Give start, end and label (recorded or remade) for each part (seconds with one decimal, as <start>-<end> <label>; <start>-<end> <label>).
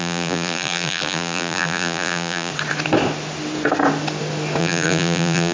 0.0-2.5 remade; 2.5-4.6 recorded; 4.6-5.5 remade